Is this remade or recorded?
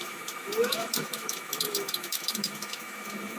remade